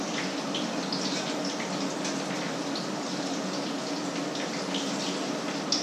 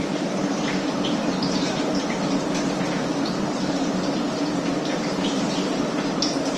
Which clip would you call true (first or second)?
first